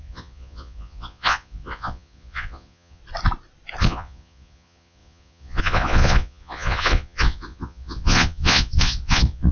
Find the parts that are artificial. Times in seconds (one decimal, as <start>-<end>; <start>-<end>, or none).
0.0-3.0; 3.8-9.5